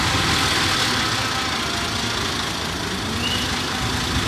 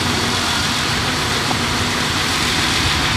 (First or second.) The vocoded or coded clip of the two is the second